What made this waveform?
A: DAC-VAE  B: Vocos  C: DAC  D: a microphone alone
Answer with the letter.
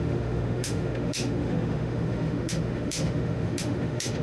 A